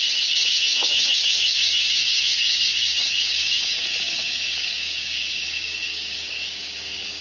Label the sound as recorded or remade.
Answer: remade